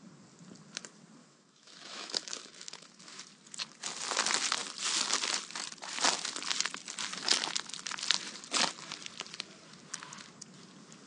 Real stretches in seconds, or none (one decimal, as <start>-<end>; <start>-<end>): 0.0-1.2; 3.2-11.1